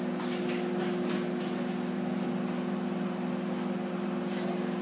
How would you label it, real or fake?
real